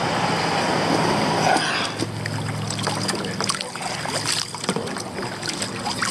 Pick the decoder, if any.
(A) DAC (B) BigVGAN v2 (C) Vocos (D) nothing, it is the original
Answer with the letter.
D